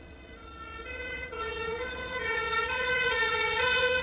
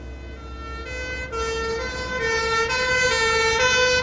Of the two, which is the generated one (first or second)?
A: first